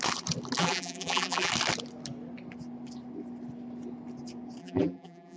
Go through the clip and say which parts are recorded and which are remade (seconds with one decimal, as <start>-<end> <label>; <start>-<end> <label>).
0.0-0.6 recorded; 0.6-1.5 remade; 1.5-4.6 recorded; 4.6-5.4 remade